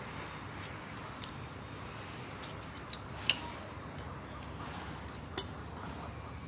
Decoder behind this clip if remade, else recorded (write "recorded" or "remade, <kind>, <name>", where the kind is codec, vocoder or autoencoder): recorded